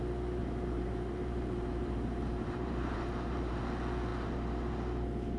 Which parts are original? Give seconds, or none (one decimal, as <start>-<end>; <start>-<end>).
0.0-0.4; 3.6-5.4